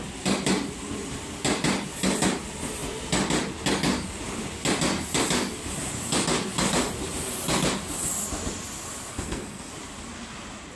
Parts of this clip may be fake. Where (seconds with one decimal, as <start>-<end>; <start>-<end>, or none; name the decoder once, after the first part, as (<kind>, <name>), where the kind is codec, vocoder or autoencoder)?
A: 9.1-9.7 (codec, SNAC)